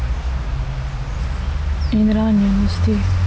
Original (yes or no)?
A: yes